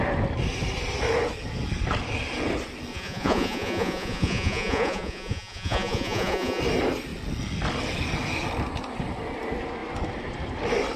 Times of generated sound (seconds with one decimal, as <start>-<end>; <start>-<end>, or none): 2.9-6.6